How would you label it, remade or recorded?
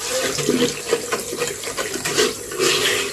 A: recorded